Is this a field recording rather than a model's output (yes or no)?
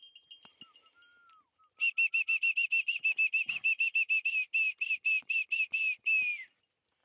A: yes